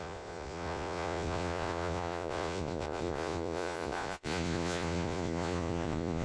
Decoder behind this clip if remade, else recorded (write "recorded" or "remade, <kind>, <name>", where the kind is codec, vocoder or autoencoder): remade, vocoder, Vocos